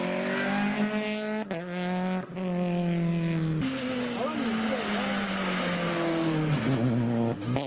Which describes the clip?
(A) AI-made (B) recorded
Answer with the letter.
B